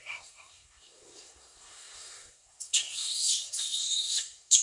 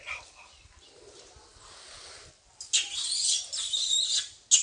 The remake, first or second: first